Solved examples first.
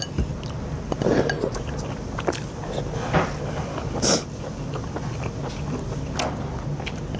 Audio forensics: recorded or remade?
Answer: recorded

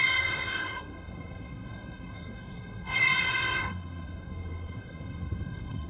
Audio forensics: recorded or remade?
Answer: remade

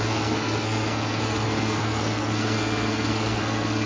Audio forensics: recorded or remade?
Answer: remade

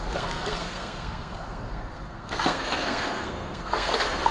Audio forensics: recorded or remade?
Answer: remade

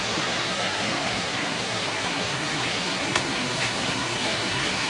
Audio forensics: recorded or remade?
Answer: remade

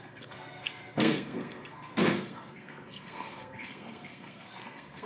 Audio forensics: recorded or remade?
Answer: remade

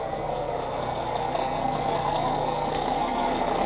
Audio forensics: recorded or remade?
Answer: remade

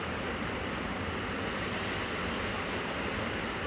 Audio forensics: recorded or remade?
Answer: recorded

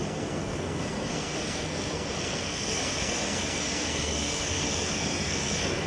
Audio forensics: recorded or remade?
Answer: remade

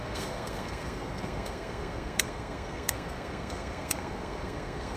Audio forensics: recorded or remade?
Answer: remade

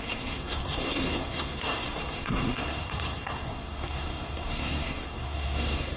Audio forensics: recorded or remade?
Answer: remade